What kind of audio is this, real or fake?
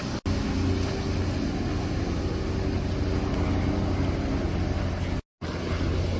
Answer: real